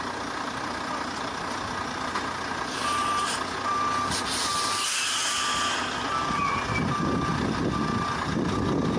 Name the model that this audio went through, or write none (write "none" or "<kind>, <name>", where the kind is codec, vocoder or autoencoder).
none